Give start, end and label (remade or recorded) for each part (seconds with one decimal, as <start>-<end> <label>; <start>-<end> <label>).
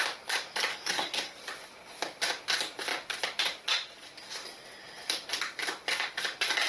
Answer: 0.0-0.7 recorded; 0.7-1.4 remade; 1.4-6.7 recorded